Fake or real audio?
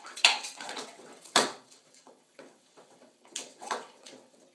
fake